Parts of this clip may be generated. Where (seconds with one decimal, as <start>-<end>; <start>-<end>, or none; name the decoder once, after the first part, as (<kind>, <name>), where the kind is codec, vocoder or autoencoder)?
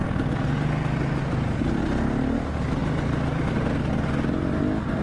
2.8-4.6 (vocoder, BigVGAN v2)